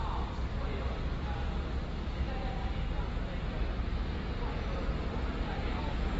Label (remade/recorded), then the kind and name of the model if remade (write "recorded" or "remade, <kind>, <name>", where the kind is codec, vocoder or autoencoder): recorded